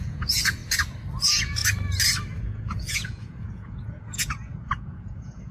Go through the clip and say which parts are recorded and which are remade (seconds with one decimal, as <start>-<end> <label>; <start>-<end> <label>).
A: 0.0-0.6 remade; 0.6-1.2 recorded; 1.2-1.6 remade; 1.6-2.4 recorded; 2.4-5.5 remade